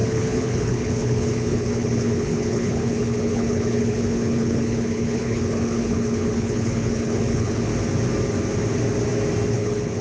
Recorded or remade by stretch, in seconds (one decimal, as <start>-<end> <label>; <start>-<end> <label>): 0.0-7.7 remade; 7.7-9.5 recorded; 9.5-10.0 remade